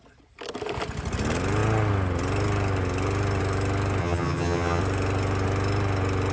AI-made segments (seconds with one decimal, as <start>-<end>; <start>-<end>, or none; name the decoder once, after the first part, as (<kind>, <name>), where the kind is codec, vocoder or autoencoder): 4.0-4.8 (vocoder, HiFi-GAN)

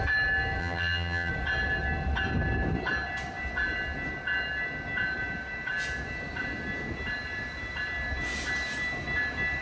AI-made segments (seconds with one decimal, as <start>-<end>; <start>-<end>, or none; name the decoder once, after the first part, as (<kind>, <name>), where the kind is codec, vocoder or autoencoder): 0.6-1.3 (vocoder, HiFi-GAN)

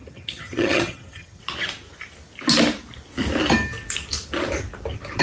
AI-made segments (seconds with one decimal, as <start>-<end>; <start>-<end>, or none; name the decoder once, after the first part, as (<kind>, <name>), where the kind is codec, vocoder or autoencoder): 0.0-1.4 (vocoder, HiFi-GAN)

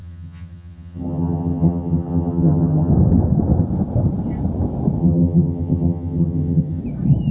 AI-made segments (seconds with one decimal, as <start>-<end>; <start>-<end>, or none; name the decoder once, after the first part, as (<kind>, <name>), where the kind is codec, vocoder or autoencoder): 0.0-2.9 (vocoder, HiFi-GAN); 5.0-6.8